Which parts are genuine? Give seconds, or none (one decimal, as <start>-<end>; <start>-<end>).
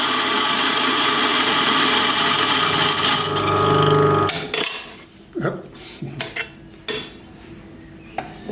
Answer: 0.0-8.5